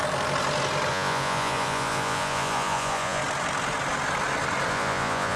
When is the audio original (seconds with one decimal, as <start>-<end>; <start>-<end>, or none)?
0.0-0.9; 3.2-4.7